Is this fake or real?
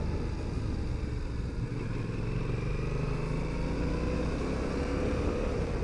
real